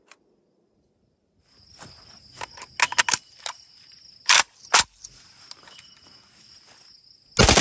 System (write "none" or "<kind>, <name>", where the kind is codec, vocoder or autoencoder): none